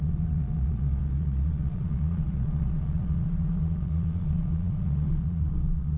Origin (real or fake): fake